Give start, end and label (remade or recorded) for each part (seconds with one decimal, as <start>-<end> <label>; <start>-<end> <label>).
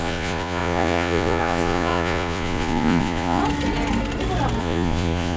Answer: 0.0-3.4 remade; 3.4-4.6 recorded; 4.6-5.4 remade